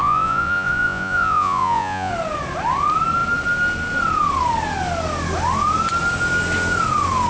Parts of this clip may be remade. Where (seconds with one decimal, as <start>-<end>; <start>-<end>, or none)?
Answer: 0.0-2.1

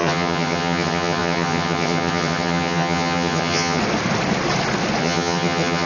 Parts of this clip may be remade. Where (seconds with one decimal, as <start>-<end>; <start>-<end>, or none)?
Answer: 0.0-3.8; 5.0-5.9

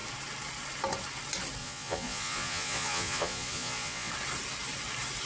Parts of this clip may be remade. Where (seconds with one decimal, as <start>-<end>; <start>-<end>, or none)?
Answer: 1.6-4.1

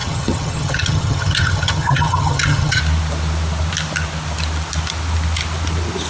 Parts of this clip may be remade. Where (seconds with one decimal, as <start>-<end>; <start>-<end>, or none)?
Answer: 0.0-2.8

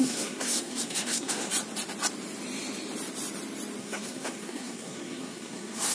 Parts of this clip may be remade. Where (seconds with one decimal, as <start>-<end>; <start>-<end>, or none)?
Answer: 0.0-1.5; 3.8-5.9

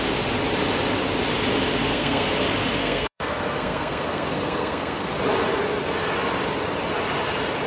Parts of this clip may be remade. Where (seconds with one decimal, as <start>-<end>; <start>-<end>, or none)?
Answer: 1.8-2.3; 2.8-5.1

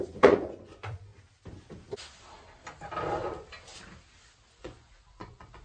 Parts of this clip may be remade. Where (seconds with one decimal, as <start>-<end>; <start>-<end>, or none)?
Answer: 0.0-1.1; 4.5-5.6